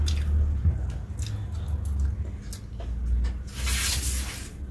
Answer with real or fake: real